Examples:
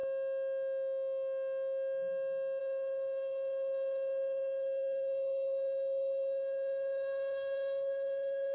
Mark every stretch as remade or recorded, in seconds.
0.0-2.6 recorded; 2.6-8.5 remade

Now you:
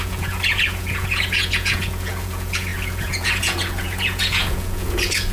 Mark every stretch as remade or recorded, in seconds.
0.0-5.3 remade